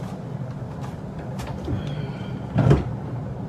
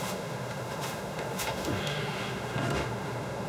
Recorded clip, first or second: first